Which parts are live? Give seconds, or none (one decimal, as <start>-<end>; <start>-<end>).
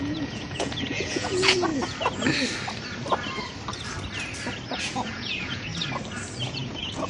1.7-4.8; 5.7-6.5